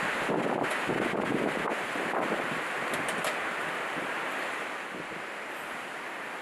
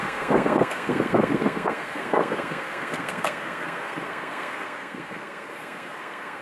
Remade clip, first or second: second